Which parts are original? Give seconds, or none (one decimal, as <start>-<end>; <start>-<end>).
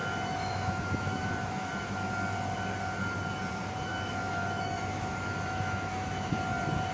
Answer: 2.1-3.9; 6.3-6.9